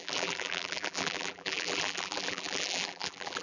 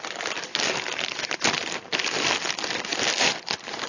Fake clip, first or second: first